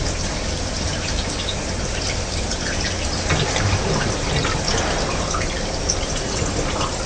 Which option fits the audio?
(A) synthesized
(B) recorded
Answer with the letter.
B